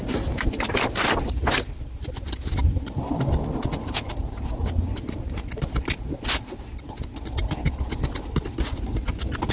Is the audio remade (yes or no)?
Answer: no